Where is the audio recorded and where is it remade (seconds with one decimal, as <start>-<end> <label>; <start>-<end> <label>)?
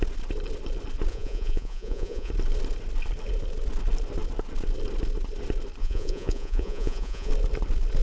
0.0-1.1 recorded; 1.1-2.3 remade; 2.3-5.8 recorded; 5.8-7.3 remade; 7.3-8.0 recorded